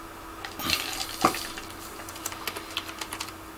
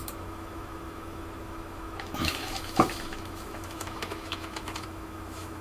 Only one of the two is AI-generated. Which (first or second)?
second